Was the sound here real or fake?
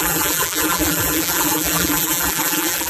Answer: fake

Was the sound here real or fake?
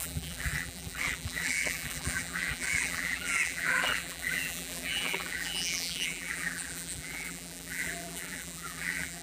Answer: fake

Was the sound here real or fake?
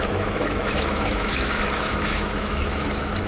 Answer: fake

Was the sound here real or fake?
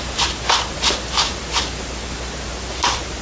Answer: real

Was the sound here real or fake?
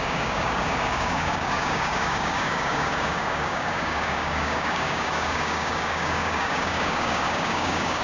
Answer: fake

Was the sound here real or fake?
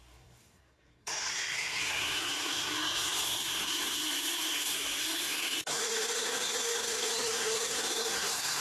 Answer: fake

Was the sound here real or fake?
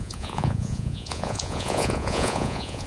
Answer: fake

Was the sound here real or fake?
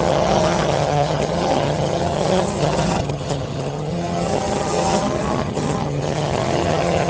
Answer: fake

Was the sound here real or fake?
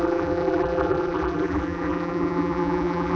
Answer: fake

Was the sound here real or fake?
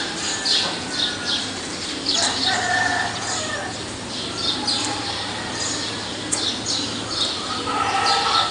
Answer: real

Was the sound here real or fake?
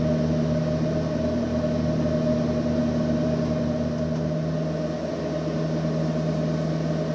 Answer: real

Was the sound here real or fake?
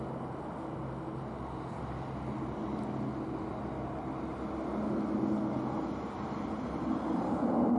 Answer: real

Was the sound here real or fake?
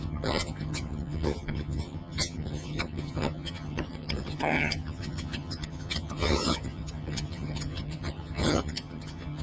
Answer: fake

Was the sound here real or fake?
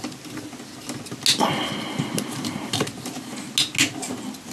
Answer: real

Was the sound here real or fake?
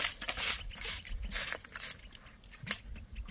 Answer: real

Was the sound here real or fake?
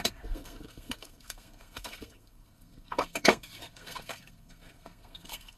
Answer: fake